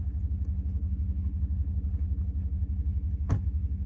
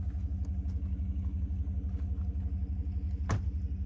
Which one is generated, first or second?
first